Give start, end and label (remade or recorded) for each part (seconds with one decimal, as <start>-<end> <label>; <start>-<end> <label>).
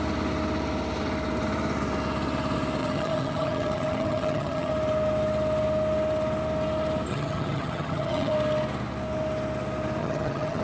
0.0-2.8 recorded; 2.8-4.7 remade; 4.7-7.1 recorded; 7.1-8.3 remade; 8.3-10.0 recorded; 10.0-10.6 remade